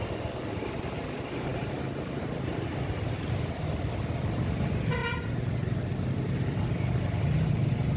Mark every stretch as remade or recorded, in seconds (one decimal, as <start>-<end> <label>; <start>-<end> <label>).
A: 0.0-1.5 recorded; 1.5-3.7 remade; 3.7-5.0 recorded; 5.0-5.8 remade; 5.8-8.0 recorded